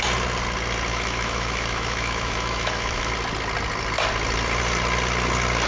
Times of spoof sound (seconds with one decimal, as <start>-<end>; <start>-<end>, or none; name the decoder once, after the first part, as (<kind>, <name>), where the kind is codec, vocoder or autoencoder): 0.9-3.1 (autoencoder, DAC-VAE)